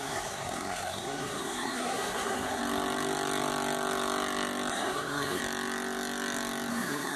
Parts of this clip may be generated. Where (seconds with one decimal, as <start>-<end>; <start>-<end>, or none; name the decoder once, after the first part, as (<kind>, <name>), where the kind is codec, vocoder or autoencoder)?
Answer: 0.0-2.6 (codec, SNAC); 4.7-5.4; 6.7-7.2